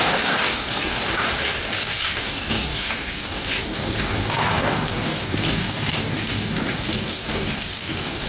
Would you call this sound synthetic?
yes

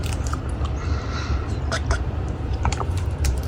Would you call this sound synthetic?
yes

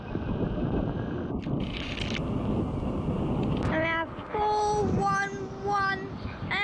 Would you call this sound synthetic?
no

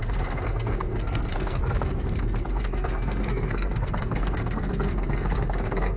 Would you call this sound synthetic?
yes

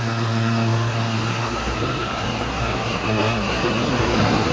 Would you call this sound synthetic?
yes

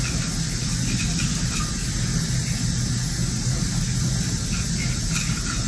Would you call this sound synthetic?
no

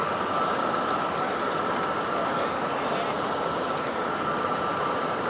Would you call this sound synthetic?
no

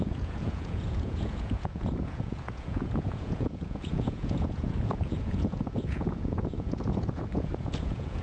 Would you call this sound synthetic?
yes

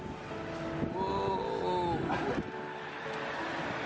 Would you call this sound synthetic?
no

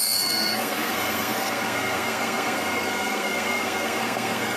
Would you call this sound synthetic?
yes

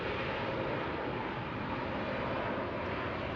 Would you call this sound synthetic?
no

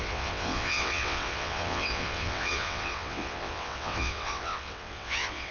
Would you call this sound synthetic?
yes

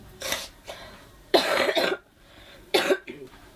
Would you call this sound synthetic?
yes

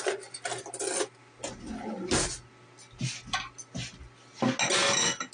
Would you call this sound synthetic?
no